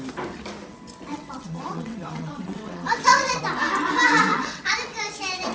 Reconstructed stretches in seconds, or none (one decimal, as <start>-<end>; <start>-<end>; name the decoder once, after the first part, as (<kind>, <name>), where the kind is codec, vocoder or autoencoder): 1.1-3.4 (vocoder, WaveNeXt); 4.3-5.0